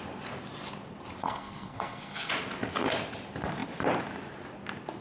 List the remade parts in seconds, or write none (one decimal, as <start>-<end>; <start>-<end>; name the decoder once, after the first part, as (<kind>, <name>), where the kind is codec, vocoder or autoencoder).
1.2-2.3 (codec, SNAC)